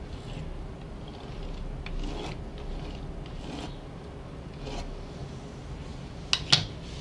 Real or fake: real